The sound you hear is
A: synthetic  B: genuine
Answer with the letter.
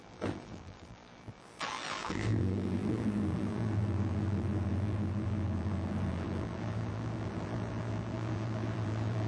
A